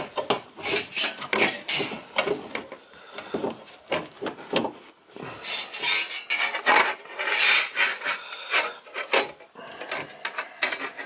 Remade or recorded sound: recorded